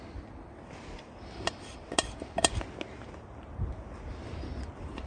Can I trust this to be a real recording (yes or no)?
yes